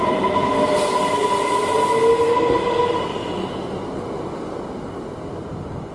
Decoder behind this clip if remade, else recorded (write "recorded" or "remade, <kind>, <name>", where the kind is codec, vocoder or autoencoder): recorded